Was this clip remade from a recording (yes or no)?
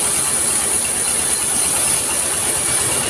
no